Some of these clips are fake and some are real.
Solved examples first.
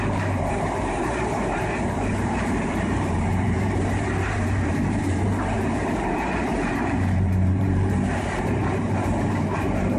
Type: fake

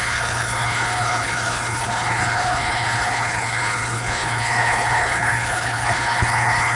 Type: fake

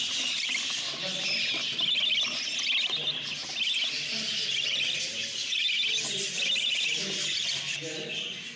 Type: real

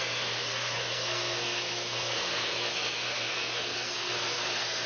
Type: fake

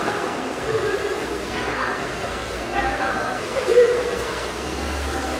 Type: fake